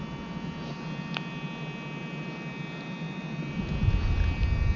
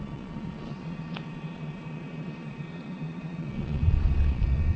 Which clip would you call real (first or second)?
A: first